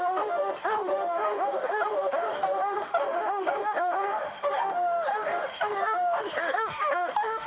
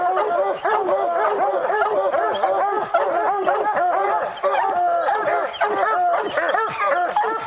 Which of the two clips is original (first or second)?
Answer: second